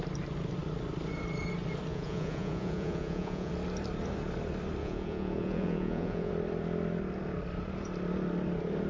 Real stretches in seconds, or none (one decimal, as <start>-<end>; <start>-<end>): 0.0-1.9; 3.5-4.8; 6.3-8.9